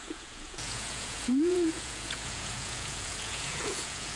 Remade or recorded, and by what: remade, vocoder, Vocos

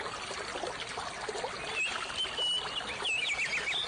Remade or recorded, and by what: recorded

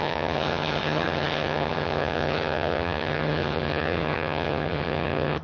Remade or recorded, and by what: remade, vocoder, HiFi-GAN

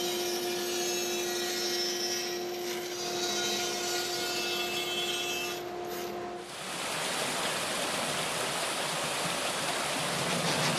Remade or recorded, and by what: recorded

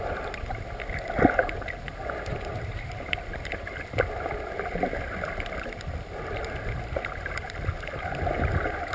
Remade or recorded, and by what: recorded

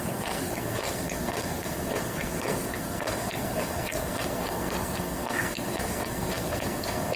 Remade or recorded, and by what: remade, codec, SNAC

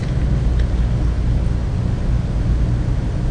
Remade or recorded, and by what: recorded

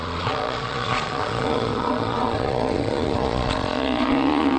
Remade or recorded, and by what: remade, vocoder, Vocos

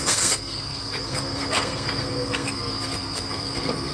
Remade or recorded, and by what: remade, codec, SNAC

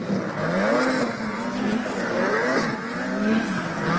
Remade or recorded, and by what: recorded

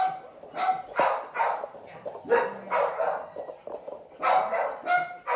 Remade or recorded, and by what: recorded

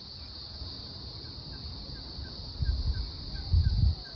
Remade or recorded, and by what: recorded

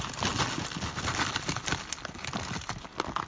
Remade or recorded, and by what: recorded